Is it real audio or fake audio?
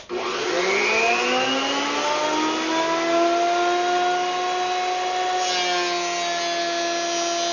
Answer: real